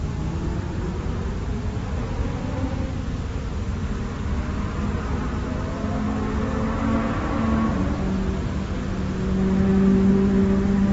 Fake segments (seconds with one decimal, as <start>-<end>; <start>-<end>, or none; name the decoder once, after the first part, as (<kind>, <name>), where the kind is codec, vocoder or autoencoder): 0.5-2.0 (vocoder, BigVGAN v2)